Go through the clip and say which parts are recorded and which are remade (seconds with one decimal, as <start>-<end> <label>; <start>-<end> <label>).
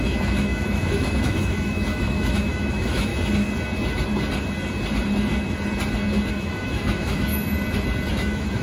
0.0-3.1 remade; 3.1-6.3 recorded; 6.3-7.3 remade; 7.3-8.1 recorded; 8.1-8.6 remade